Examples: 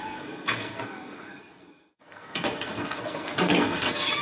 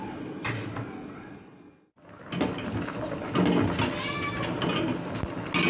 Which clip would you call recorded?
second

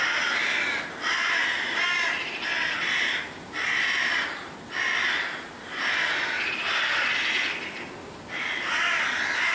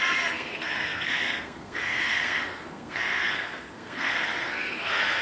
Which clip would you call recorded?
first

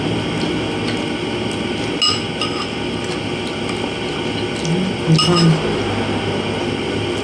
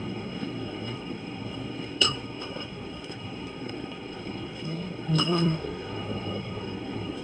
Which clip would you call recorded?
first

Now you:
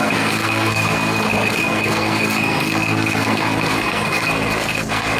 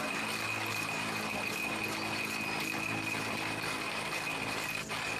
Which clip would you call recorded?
second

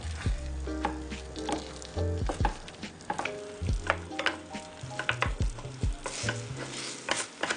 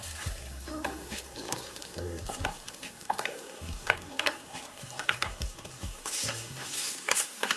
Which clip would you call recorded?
first